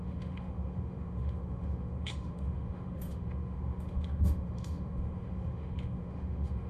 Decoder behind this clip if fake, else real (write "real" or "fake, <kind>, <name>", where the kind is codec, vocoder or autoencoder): fake, autoencoder, DAC-VAE